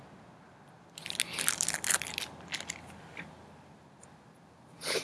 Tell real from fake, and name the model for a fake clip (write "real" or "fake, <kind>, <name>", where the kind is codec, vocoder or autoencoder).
real